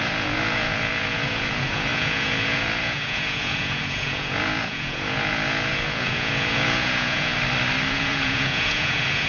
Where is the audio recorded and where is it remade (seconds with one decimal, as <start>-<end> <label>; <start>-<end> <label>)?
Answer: 0.0-7.3 remade; 7.3-7.9 recorded; 7.9-9.3 remade